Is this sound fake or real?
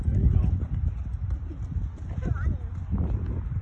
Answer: real